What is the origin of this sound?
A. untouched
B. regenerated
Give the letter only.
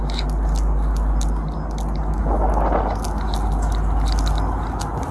A